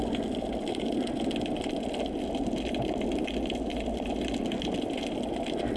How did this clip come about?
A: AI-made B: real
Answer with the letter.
B